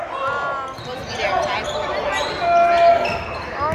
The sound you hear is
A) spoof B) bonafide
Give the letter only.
B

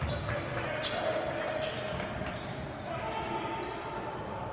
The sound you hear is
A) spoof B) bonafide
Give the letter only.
B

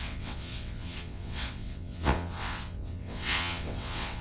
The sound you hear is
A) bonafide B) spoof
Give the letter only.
B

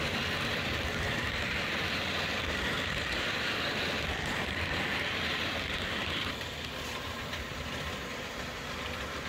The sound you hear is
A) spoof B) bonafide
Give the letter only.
A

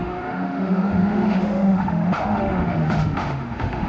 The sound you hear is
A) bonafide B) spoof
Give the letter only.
B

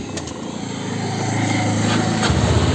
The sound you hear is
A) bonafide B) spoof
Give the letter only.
A